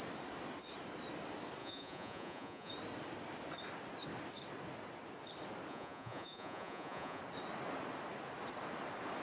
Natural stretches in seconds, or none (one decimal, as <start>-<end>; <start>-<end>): 0.0-1.6; 2.7-5.7; 7.2-9.2